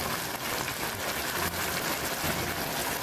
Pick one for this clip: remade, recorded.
recorded